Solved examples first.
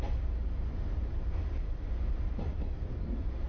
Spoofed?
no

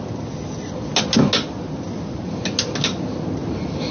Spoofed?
no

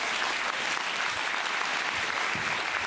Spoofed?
no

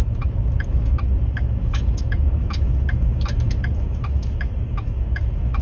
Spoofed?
yes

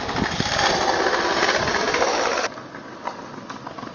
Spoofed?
no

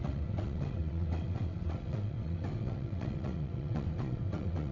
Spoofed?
yes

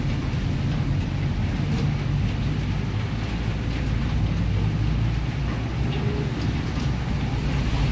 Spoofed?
no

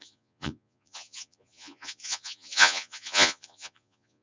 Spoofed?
yes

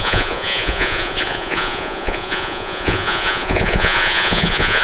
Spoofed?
yes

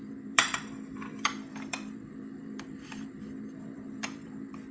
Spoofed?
yes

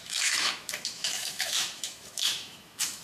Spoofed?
yes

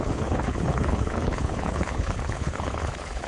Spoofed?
yes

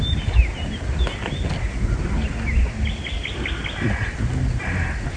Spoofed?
no